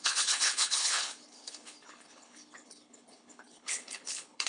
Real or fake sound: fake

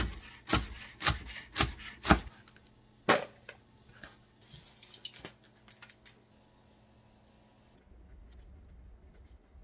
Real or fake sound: real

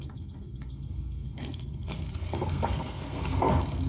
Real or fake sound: fake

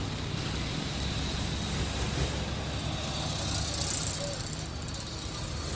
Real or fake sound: real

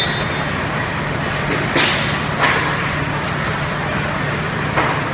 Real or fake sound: real